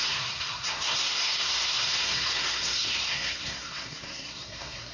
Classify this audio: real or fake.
fake